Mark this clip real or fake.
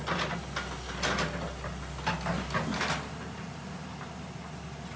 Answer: real